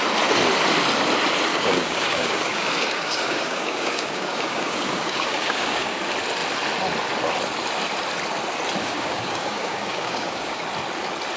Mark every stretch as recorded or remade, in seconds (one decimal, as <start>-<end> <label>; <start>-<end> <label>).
0.0-1.5 recorded; 1.5-6.0 remade; 6.0-8.8 recorded; 8.8-10.6 remade; 10.6-11.4 recorded